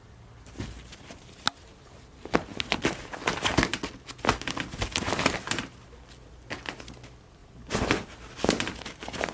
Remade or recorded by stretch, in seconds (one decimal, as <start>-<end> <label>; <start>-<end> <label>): 0.0-9.3 recorded

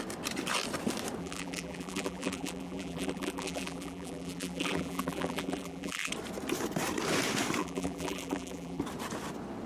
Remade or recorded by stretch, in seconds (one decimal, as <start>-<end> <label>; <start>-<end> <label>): 0.0-1.2 recorded; 1.2-6.1 remade; 6.1-7.6 recorded; 7.6-8.8 remade; 8.8-9.7 recorded

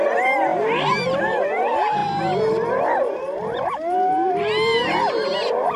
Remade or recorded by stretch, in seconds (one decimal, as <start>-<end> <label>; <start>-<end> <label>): 0.0-5.8 remade

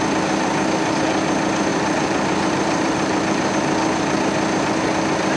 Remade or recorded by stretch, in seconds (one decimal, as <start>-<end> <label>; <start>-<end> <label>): 0.0-1.7 recorded; 1.7-3.5 remade; 3.5-5.4 recorded